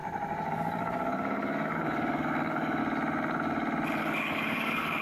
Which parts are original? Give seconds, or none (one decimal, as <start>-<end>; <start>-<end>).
0.0-0.5; 2.8-4.0